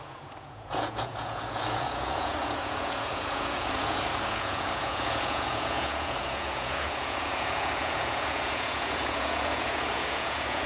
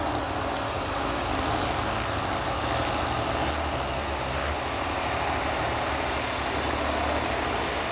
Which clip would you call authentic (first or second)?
second